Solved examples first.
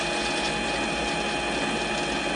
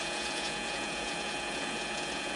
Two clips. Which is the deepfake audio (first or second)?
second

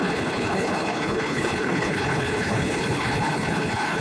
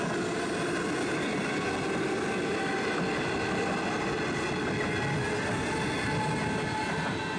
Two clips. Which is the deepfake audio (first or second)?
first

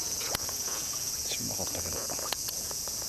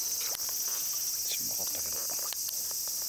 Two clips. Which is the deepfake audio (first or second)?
first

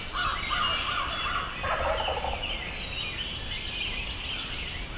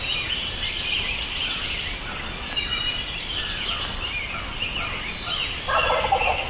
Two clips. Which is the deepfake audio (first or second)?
second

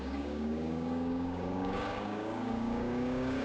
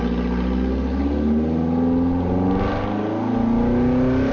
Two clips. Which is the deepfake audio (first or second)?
first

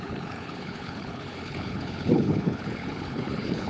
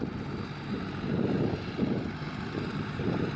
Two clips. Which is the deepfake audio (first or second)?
first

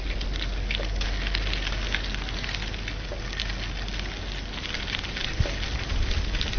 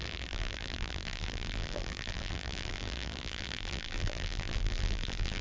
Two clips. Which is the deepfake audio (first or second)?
second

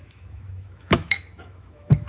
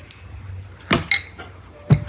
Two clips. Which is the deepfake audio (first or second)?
first